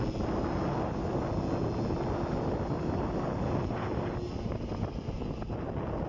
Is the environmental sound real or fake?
real